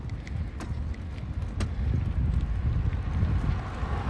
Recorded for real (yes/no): yes